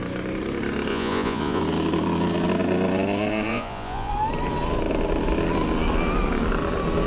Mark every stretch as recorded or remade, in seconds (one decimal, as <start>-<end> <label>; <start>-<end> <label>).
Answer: 0.0-0.9 recorded; 0.9-1.6 remade; 1.6-3.5 recorded; 3.5-4.1 remade; 4.1-7.1 recorded